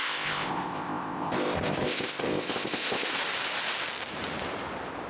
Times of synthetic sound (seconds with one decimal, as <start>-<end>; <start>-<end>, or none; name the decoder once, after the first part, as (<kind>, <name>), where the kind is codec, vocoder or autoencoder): 0.0-3.1 (codec, ZipCodec)